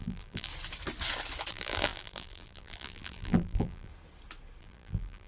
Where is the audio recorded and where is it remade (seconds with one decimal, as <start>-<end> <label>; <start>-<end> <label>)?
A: 0.0-0.5 remade; 0.5-1.5 recorded; 1.5-3.9 remade; 3.9-4.6 recorded; 4.6-5.3 remade